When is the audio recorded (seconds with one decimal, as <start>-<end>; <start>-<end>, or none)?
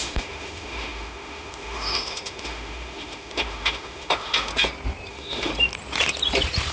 4.5-5.1; 5.5-6.7